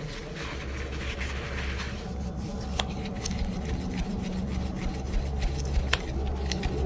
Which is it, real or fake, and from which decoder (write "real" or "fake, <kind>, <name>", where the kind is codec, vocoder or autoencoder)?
real